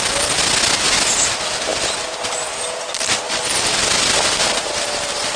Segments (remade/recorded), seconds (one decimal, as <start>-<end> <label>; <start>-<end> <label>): 0.0-5.4 recorded